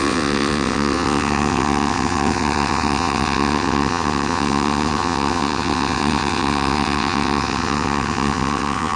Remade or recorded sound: remade